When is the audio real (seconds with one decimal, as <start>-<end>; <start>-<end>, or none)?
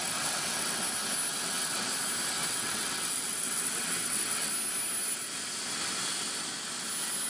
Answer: 0.8-1.3; 1.8-2.4; 4.5-7.3